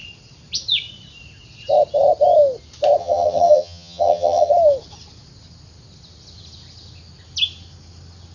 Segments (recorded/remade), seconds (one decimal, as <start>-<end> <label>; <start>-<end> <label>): 0.0-3.0 recorded; 3.0-4.5 remade; 4.5-8.3 recorded